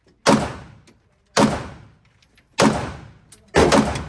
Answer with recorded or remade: recorded